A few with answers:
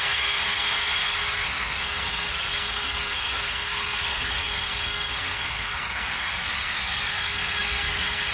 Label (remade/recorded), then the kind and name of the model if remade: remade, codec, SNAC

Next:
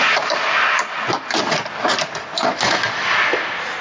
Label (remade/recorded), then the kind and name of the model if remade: recorded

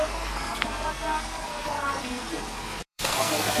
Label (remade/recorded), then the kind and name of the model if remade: remade, codec, SNAC